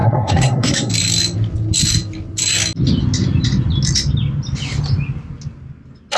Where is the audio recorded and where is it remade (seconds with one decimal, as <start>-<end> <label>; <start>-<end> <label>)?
0.0-0.9 remade; 0.9-6.2 recorded